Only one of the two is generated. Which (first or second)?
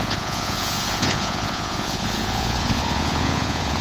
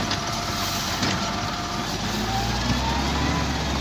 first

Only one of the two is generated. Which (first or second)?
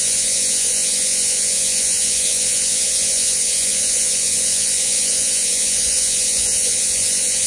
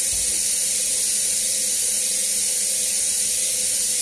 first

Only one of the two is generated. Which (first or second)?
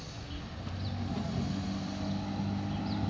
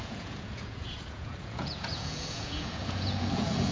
second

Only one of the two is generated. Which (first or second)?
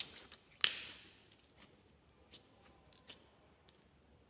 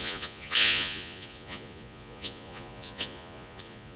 second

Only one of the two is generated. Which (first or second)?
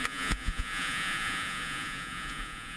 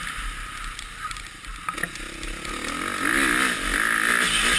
first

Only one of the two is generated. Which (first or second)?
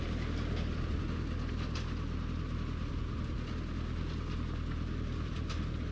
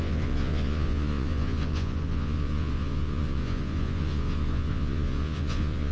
second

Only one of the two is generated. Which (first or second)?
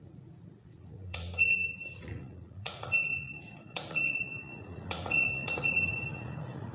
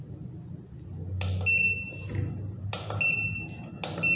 first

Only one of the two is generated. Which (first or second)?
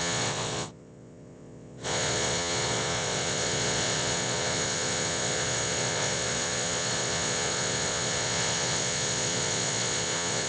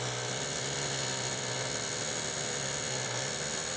first